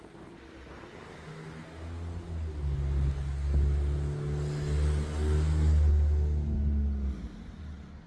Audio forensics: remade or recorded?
recorded